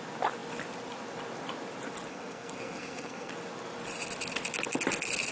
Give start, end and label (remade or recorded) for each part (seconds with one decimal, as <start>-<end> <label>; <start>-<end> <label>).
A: 0.0-2.1 recorded; 2.1-3.3 remade; 3.3-5.3 recorded